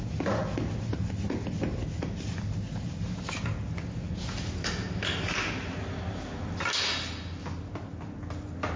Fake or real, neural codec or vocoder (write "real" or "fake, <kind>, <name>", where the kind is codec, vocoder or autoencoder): real